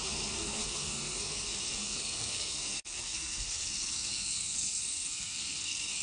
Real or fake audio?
fake